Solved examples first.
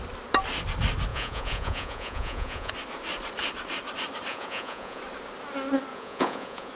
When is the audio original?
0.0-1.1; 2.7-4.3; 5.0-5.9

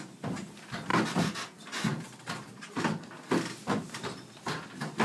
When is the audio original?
0.0-5.0

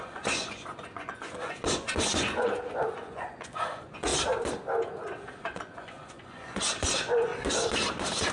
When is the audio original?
4.1-5.4; 7.3-8.3

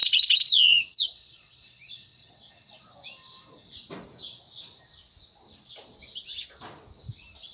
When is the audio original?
2.5-7.5